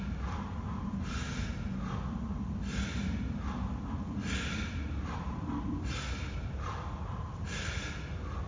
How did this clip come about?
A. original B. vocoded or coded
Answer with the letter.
A